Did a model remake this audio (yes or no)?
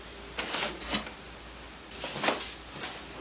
no